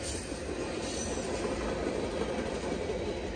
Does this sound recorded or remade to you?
recorded